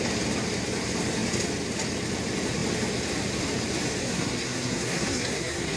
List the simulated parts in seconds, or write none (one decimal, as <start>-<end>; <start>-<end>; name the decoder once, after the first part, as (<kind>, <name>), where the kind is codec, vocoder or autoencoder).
4.0-5.8 (codec, SNAC)